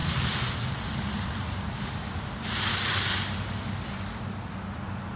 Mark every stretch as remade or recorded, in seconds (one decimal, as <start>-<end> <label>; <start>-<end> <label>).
0.0-5.2 recorded